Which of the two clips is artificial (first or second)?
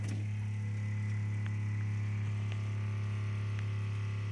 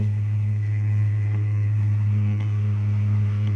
second